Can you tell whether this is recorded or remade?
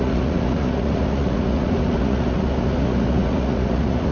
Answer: remade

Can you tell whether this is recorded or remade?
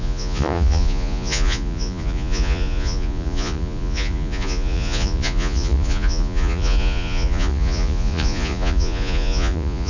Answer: remade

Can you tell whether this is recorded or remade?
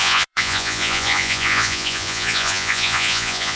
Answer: remade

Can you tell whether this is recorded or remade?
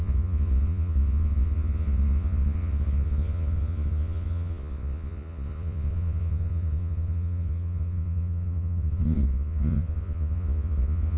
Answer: remade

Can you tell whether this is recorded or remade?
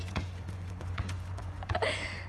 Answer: remade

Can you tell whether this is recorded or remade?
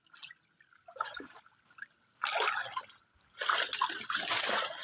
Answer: recorded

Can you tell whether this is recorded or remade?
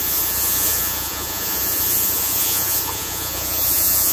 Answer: remade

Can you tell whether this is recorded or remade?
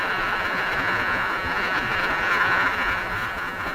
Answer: remade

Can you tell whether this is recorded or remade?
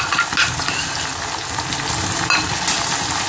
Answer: recorded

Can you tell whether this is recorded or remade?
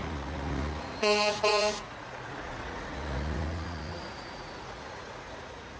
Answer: remade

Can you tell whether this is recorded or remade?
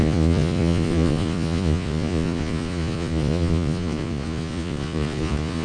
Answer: remade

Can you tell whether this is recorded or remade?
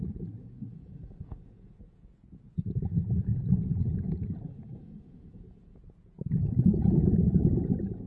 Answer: remade